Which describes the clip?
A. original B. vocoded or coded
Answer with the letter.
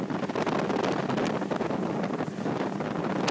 A